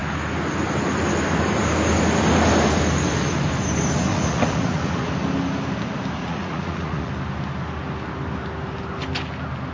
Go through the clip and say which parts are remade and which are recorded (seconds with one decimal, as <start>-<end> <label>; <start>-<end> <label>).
0.0-4.1 recorded; 4.1-5.1 remade; 5.1-6.2 recorded; 6.2-7.1 remade; 7.1-9.7 recorded